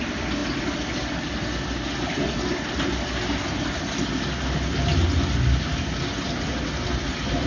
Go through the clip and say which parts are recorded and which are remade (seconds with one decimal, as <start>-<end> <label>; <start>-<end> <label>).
0.0-7.5 recorded